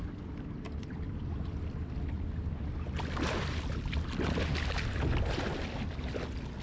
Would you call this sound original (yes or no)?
yes